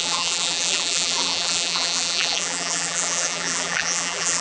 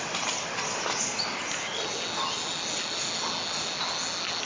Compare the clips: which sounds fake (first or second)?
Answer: first